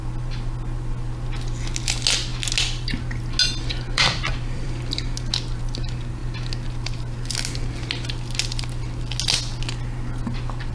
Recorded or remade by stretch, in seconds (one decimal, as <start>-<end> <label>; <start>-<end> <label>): 0.0-3.7 recorded; 3.7-4.8 remade; 4.8-10.7 recorded